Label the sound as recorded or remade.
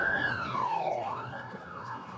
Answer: remade